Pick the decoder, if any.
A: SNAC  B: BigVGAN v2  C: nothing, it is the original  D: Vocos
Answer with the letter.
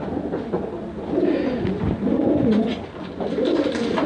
C